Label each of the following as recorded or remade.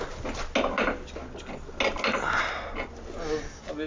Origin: recorded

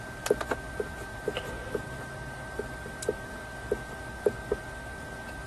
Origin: recorded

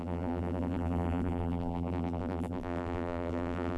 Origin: remade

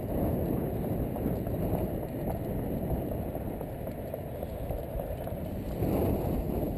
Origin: recorded